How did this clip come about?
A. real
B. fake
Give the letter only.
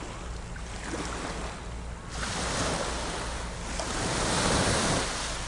A